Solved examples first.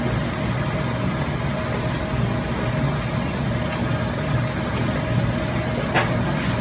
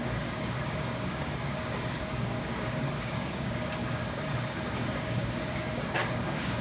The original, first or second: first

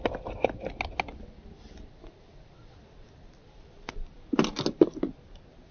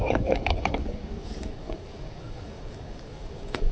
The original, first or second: first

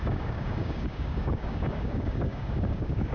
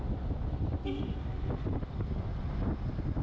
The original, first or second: second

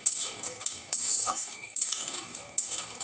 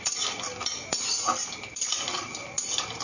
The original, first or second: second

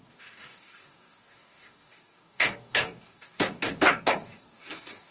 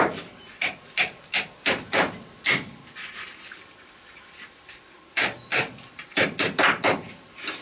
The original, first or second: second